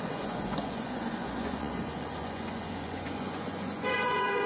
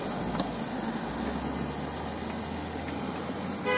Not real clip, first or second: first